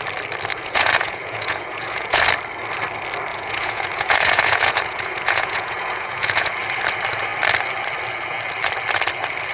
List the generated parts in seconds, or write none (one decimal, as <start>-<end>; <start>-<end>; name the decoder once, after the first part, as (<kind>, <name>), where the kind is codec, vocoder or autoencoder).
0.5-2.2 (vocoder, Vocos); 3.3-6.5